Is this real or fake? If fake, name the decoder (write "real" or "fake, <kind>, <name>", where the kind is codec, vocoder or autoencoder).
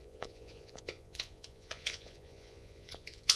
fake, vocoder, Vocos